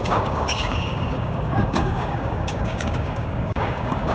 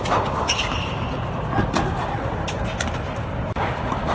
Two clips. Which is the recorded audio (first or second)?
second